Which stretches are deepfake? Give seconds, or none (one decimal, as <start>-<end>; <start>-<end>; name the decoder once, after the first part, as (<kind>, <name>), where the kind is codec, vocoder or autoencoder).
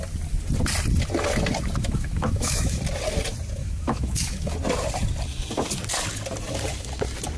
1.8-2.8 (autoencoder, DAC-VAE); 3.6-4.5